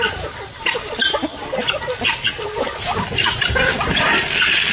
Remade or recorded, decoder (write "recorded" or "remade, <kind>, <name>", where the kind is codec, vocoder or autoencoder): recorded